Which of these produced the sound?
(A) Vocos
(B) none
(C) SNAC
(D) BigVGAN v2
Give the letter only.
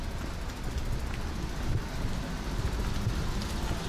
B